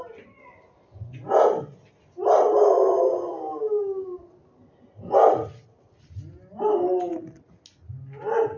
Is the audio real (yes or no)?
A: yes